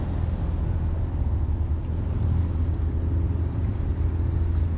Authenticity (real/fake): real